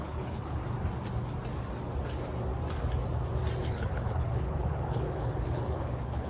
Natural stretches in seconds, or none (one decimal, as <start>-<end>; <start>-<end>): 0.6-3.6